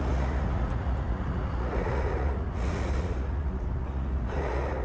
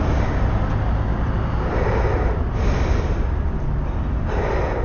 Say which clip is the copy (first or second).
first